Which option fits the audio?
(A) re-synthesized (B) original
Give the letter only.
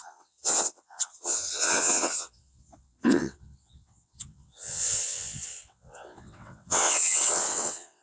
A